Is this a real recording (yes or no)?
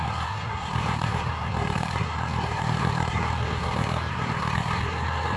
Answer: no